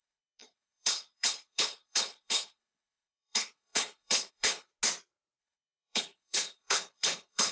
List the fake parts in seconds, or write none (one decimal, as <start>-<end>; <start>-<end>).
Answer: 0.0-4.7; 5.4-7.5